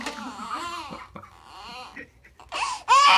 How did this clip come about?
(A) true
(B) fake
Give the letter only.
B